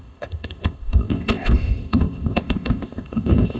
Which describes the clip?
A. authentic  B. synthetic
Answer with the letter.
B